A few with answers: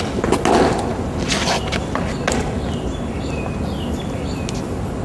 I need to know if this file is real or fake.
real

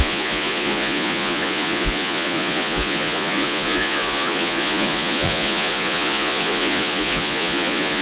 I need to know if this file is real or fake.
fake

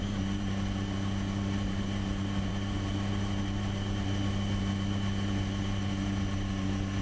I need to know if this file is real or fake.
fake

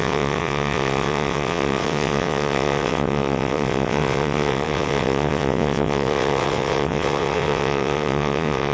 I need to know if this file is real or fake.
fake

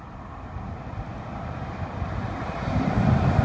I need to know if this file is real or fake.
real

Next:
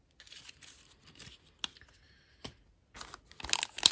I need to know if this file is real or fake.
real